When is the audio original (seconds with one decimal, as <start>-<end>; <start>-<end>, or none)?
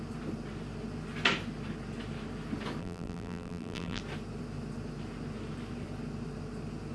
0.0-2.8; 4.0-6.9